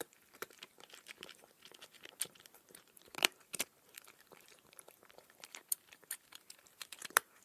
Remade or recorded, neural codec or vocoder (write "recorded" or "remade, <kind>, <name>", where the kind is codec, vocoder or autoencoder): remade, vocoder, BigVGAN v2